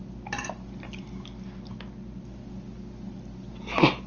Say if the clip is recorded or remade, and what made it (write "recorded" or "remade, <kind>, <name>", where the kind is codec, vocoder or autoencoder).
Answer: recorded